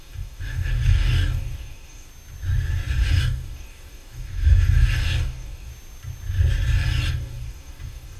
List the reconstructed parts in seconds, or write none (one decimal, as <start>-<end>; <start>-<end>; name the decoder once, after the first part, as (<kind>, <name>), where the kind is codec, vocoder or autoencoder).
0.0-2.1 (codec, DAC); 3.2-5.7; 7.1-8.2